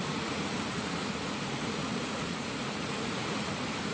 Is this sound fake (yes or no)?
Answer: yes